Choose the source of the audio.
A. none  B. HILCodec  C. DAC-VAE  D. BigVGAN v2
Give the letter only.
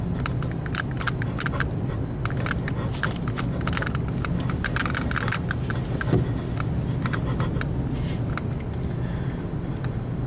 A